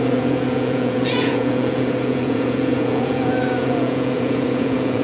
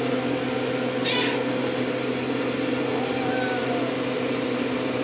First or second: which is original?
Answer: second